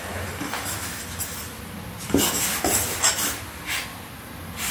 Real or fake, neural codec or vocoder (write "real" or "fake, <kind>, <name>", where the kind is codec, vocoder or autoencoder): real